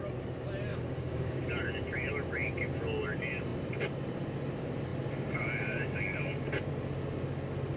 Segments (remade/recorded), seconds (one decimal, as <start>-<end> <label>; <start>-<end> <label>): 0.0-0.7 recorded; 0.7-1.4 remade; 1.4-7.8 recorded